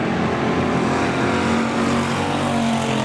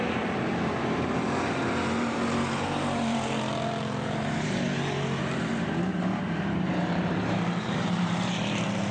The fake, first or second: second